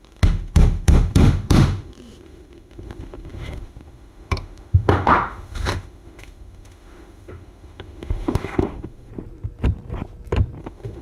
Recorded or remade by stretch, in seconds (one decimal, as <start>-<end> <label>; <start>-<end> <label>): 0.0-9.1 remade; 9.1-10.6 recorded; 10.6-11.0 remade